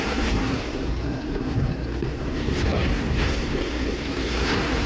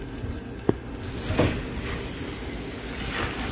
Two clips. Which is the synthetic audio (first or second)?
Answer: first